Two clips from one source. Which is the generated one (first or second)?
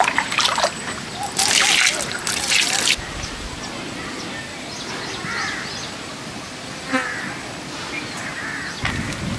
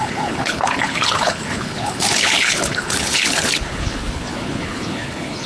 second